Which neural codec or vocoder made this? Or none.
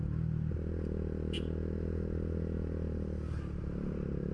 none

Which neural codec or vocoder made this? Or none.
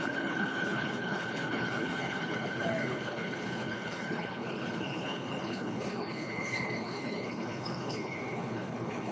codec, HILCodec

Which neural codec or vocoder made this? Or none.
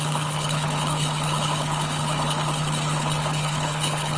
codec, HILCodec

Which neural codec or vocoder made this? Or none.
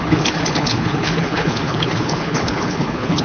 codec, HILCodec